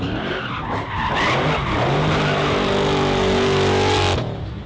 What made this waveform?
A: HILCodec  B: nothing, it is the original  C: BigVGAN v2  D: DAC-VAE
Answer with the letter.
B